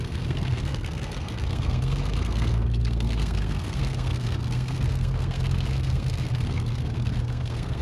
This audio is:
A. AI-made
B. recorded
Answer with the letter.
A